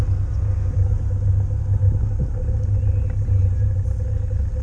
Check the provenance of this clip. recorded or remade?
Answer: recorded